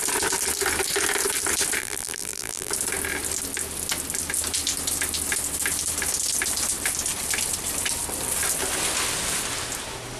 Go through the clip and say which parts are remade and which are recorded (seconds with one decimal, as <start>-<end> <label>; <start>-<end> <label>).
0.0-1.8 recorded; 1.8-2.7 remade; 2.7-10.2 recorded